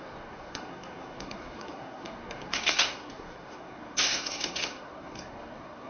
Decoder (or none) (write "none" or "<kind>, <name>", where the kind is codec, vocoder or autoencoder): codec, SNAC